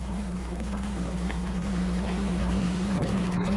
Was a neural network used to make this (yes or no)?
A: yes